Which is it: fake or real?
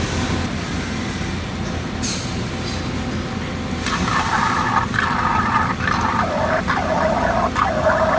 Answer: real